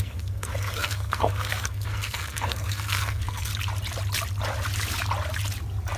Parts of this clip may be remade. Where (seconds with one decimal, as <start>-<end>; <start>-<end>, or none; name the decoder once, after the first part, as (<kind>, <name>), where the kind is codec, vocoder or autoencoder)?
0.0-3.5 (codec, SNAC)

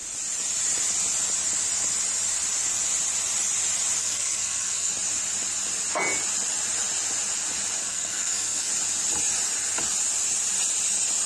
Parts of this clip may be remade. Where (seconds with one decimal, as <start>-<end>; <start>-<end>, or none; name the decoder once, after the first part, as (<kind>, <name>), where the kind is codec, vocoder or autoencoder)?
4.0-4.9 (codec, SNAC); 7.8-8.7

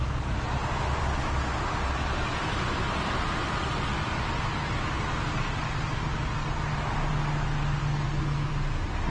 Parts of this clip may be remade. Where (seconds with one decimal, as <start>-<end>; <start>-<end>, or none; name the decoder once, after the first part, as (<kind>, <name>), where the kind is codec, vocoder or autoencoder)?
7.8-8.5 (codec, SNAC)

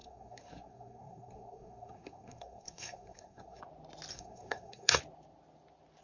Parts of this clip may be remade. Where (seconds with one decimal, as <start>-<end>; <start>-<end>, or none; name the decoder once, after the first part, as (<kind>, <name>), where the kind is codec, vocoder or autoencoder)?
0.0-3.6 (codec, SNAC); 4.1-5.0

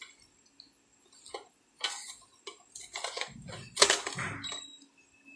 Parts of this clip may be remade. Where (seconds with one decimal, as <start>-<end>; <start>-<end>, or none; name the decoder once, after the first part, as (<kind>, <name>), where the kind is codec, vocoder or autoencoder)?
none

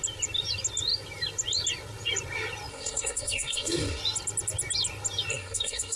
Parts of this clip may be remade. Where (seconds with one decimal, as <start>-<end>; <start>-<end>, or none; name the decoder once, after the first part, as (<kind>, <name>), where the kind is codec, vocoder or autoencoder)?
2.7-4.0 (codec, SNAC); 5.3-6.0